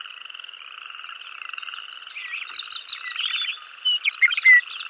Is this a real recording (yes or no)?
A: yes